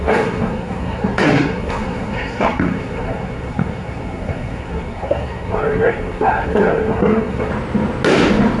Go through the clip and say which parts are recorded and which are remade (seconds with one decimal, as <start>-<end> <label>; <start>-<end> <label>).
0.0-7.5 remade; 7.5-8.6 recorded